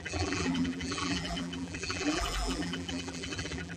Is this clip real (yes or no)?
no